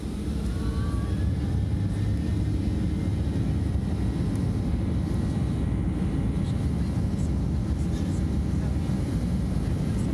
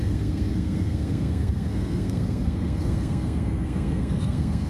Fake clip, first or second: second